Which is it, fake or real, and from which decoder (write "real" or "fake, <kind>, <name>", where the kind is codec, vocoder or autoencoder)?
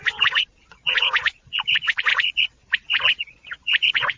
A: fake, vocoder, Vocos